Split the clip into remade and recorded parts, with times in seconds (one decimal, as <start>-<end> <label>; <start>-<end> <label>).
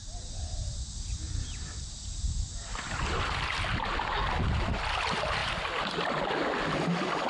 0.0-7.3 recorded